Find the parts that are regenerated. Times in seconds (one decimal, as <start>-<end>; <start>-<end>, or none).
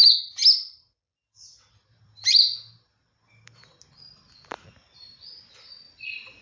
none